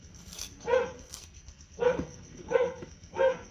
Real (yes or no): no